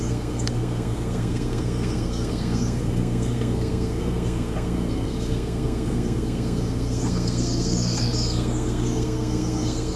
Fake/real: fake